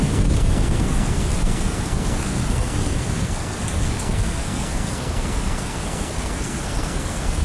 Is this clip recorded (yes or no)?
no